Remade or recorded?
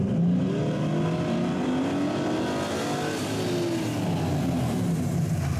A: recorded